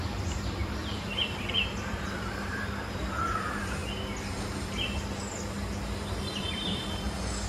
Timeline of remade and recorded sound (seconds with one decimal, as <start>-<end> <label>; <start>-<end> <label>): 0.0-3.8 remade; 3.8-6.4 recorded; 6.4-7.5 remade